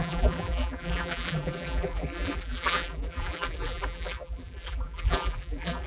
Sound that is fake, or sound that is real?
fake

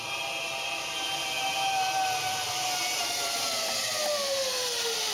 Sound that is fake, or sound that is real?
real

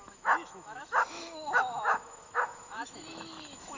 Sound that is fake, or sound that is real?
fake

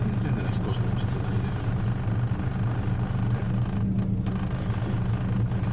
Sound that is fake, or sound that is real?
real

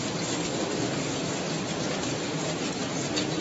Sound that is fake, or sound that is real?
real